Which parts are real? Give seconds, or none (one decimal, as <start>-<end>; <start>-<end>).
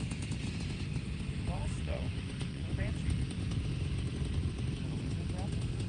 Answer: 0.0-1.8; 2.9-5.9